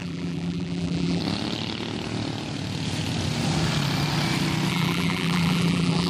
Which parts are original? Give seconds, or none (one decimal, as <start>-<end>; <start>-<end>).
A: 1.2-4.7